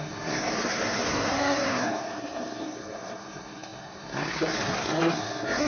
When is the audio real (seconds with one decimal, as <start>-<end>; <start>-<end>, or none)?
none